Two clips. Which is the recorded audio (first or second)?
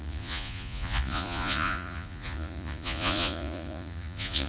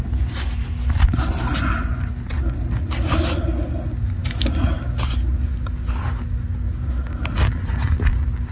second